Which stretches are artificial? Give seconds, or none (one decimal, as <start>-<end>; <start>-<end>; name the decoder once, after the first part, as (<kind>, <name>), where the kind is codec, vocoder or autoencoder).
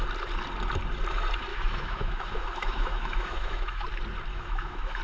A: 1.5-3.8 (autoencoder, DAC-VAE); 4.3-5.0